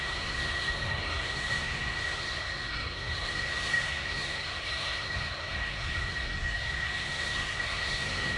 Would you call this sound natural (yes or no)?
no